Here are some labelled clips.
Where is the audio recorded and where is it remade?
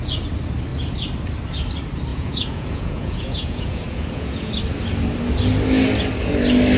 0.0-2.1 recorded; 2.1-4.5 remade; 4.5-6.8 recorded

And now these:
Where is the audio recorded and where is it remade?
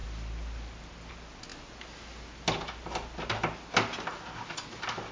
0.0-5.1 recorded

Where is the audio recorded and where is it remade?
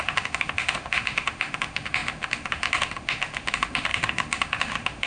0.0-5.1 remade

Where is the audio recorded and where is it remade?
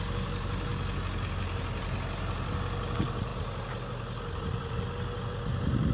0.0-5.9 recorded